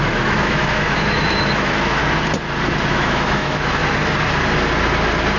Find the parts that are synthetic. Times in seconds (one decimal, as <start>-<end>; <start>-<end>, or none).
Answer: 0.0-2.0; 2.9-3.8